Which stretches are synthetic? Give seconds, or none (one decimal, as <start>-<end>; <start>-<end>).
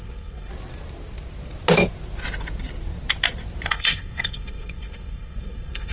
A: 0.0-0.5; 3.7-5.9